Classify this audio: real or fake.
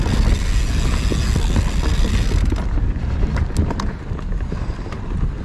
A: real